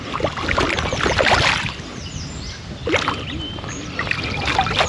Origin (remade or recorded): recorded